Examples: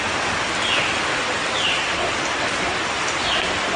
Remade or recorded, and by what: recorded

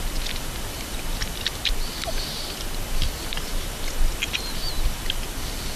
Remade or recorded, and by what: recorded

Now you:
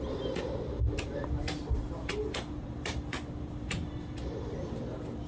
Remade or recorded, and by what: recorded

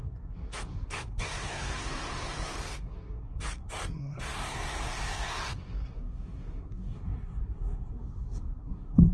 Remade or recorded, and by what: remade, codec, SNAC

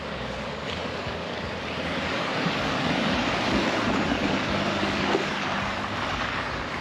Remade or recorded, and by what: remade, codec, DAC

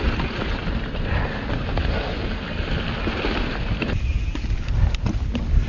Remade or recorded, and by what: recorded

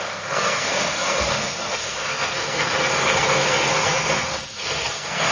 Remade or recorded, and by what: remade, codec, SNAC